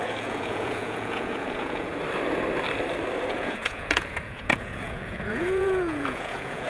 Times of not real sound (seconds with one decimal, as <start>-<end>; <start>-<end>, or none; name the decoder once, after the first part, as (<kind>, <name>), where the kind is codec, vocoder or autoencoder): 0.0-1.9 (vocoder, Vocos); 3.3-6.7